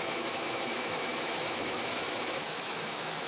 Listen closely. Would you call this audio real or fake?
fake